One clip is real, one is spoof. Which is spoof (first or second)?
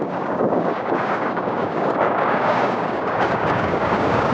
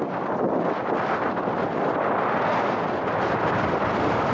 first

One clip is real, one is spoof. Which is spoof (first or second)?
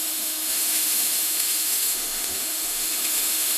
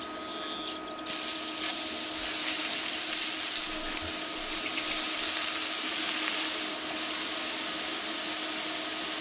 first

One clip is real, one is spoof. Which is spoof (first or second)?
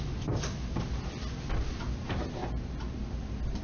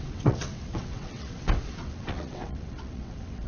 second